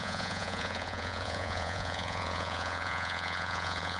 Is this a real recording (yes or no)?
no